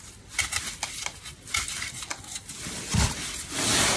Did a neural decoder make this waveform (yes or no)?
no